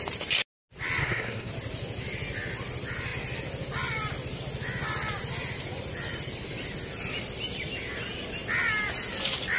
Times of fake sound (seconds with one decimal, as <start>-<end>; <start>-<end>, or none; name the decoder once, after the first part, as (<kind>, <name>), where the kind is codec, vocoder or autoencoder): 1.0-1.5 (codec, SNAC)